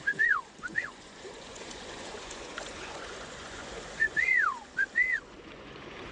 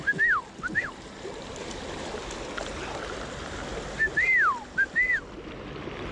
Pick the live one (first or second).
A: second